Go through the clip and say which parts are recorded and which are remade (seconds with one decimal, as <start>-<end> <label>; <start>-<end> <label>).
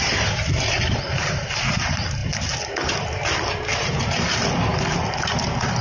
0.0-5.8 recorded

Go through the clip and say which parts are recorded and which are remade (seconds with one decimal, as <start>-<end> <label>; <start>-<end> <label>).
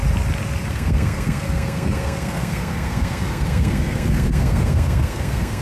0.0-0.7 recorded; 0.7-5.6 remade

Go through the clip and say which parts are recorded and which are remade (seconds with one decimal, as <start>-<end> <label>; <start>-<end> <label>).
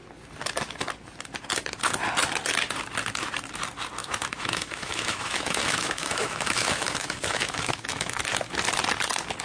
0.0-4.0 recorded; 4.0-8.2 remade; 8.2-9.4 recorded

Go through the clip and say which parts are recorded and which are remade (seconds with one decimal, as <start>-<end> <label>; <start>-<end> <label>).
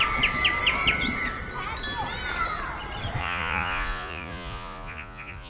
0.0-3.2 recorded; 3.2-5.5 remade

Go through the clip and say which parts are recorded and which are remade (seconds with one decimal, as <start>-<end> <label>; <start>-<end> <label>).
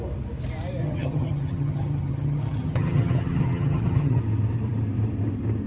0.0-0.8 recorded; 0.8-4.2 remade; 4.2-5.7 recorded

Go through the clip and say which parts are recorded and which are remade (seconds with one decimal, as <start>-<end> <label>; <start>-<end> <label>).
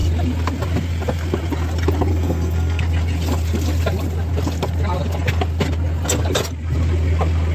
0.0-2.1 recorded; 2.1-2.8 remade; 2.8-7.5 recorded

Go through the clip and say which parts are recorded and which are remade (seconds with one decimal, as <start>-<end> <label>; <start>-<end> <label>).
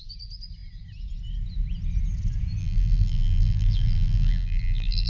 0.0-2.6 recorded; 2.6-5.1 remade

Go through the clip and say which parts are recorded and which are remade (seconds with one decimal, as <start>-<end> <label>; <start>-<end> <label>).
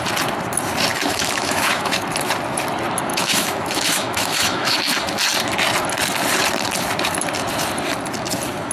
0.0-0.9 recorded; 0.9-2.0 remade; 2.0-3.1 recorded; 3.1-4.8 remade; 4.8-8.7 recorded